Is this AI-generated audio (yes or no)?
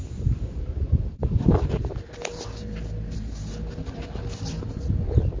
no